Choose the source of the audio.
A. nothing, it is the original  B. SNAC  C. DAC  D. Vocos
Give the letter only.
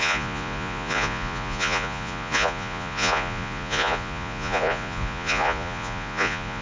D